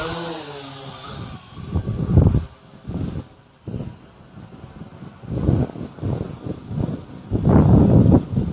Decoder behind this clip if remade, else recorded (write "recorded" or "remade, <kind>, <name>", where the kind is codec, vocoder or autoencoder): recorded